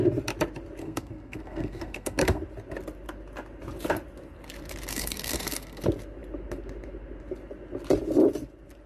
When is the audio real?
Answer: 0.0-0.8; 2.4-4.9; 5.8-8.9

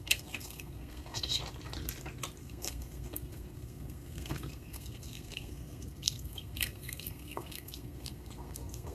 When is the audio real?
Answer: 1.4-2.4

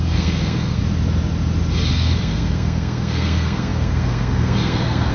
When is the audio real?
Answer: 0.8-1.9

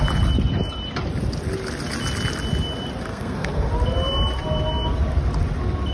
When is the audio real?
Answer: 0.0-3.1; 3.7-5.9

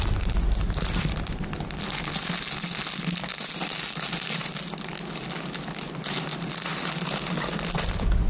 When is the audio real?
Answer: 0.0-8.3

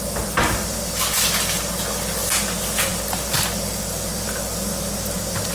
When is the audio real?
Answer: 0.0-5.5

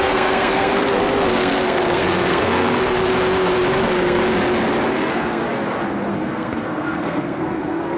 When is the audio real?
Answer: 3.1-3.8; 4.2-4.9; 5.4-6.1